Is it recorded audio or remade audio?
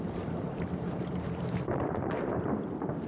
remade